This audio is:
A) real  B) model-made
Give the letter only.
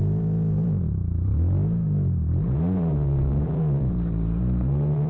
B